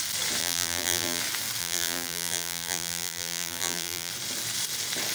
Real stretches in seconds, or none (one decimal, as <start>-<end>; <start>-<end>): 0.0-0.4; 1.2-1.6; 4.1-5.1

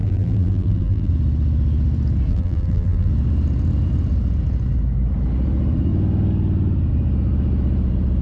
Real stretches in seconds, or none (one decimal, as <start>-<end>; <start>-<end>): 1.1-2.3; 3.1-8.2

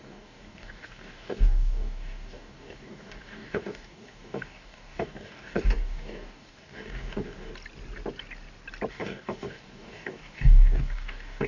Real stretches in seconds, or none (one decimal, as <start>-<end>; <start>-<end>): 7.5-8.9